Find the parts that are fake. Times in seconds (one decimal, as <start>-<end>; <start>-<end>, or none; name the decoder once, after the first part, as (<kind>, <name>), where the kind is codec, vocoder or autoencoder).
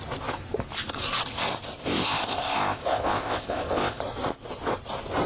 1.8-4.0 (codec, ZipCodec)